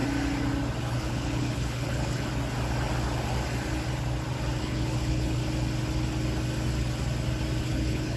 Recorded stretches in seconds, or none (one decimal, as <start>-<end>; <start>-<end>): 0.0-0.8; 2.3-4.6; 5.4-7.6